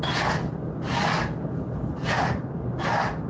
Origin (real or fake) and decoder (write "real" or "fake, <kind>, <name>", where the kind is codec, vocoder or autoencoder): real